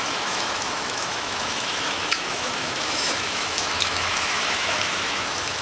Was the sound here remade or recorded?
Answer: remade